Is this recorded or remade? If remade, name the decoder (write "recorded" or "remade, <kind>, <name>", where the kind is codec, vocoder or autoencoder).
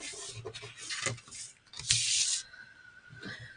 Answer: recorded